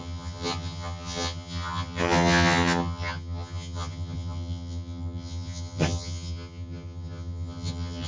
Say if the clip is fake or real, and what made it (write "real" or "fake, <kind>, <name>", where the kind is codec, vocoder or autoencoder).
fake, vocoder, HiFi-GAN